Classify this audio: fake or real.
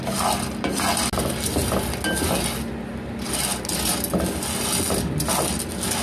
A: real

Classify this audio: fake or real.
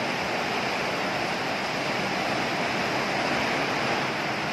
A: real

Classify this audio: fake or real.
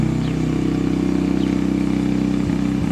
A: real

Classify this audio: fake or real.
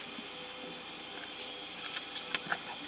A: real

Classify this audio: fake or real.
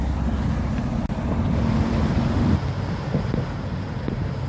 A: real